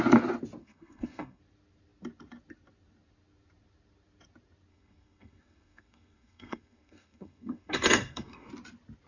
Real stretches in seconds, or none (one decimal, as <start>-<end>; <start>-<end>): 0.0-0.6; 1.4-4.7; 8.5-9.1

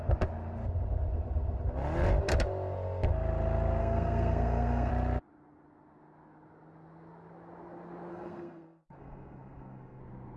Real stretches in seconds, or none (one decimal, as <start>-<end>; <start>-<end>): 0.0-3.8; 4.9-8.1; 10.0-10.4

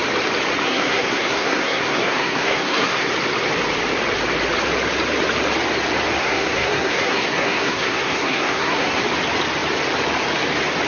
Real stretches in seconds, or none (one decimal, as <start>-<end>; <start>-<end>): 0.0-0.6; 3.1-6.2; 9.0-10.9

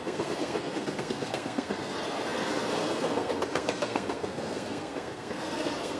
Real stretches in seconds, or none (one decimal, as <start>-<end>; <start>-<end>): none